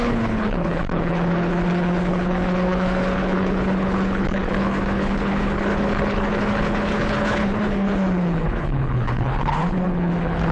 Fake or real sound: fake